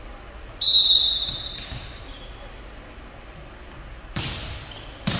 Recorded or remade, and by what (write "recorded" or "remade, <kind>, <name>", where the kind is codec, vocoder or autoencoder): recorded